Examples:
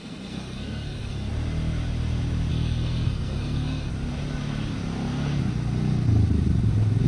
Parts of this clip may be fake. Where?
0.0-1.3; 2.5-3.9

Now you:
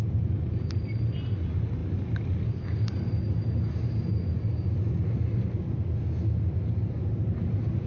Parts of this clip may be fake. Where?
none

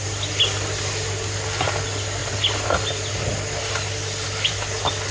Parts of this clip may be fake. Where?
none